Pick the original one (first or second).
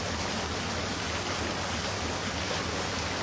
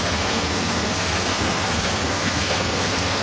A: first